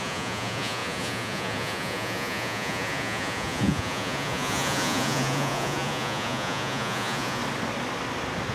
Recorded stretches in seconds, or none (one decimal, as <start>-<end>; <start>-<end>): 7.4-8.5